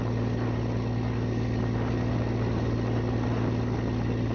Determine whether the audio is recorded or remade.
recorded